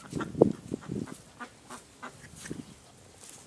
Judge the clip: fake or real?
real